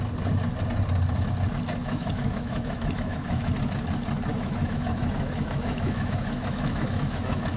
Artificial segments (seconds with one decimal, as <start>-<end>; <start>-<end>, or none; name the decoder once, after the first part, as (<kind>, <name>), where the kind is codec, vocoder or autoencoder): 1.8-3.5 (autoencoder, DAC-VAE); 4.3-7.6